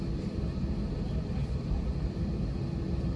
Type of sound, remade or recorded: remade